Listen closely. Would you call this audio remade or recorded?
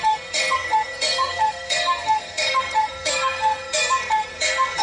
remade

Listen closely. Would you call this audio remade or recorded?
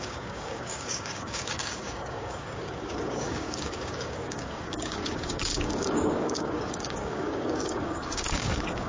remade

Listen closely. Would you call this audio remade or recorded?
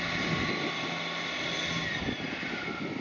recorded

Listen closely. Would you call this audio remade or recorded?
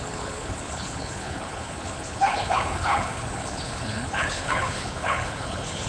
remade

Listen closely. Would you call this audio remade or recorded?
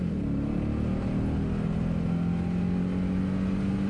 recorded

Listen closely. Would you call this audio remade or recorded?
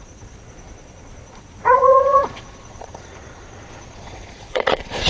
remade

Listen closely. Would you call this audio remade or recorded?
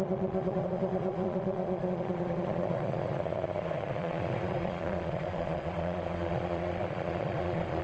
remade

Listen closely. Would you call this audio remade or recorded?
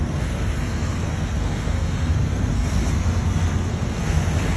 remade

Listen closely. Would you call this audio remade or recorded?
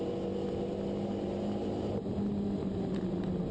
recorded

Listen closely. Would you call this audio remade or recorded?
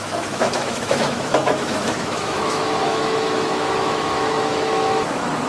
remade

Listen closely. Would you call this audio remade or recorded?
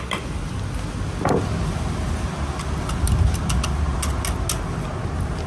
recorded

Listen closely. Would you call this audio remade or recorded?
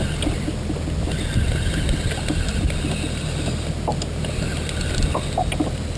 recorded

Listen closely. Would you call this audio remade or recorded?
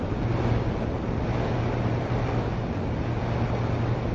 recorded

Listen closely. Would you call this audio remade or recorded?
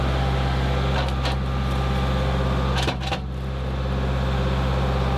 recorded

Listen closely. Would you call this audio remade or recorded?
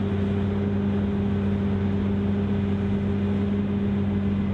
recorded